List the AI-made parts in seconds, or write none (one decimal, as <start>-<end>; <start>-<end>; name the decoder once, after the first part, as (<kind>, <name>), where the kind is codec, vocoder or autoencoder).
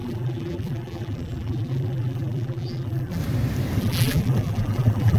0.0-3.2 (vocoder, BigVGAN v2); 3.8-5.2